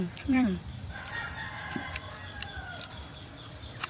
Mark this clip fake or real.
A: fake